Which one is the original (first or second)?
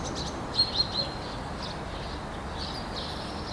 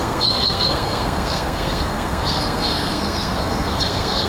first